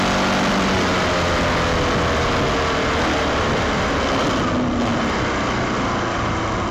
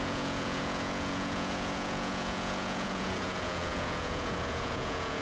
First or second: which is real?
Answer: first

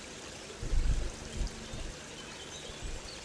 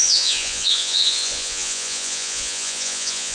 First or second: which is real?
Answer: first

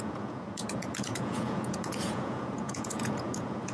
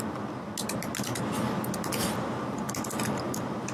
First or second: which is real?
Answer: second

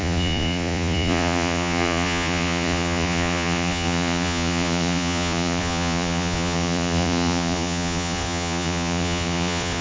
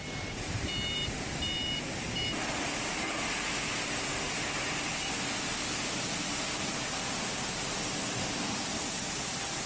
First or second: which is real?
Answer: second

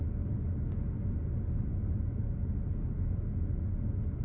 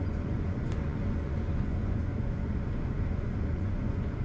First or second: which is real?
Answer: first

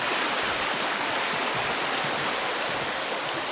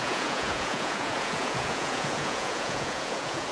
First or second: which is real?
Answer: first